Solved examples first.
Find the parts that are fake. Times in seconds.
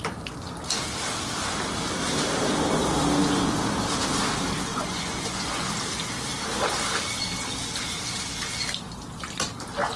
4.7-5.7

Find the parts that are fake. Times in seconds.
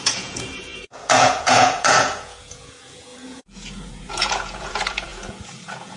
0.0-6.0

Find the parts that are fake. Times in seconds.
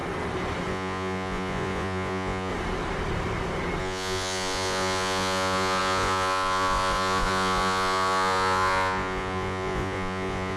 0.7-2.5; 3.8-10.6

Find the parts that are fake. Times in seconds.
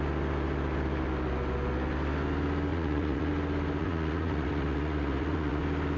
2.7-3.3; 3.8-5.6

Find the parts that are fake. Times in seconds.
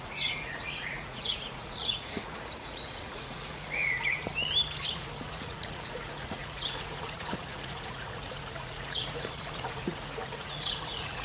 0.0-4.3; 4.9-11.2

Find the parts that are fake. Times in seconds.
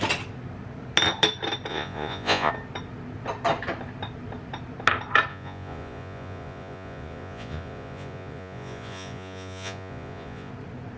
1.7-2.5; 5.3-10.5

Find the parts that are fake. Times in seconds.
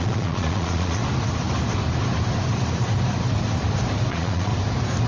0.0-1.0; 4.1-4.5